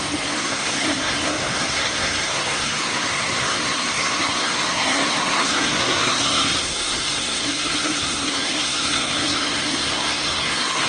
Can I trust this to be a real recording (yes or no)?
no